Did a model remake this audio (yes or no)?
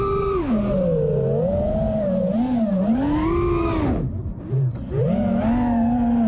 no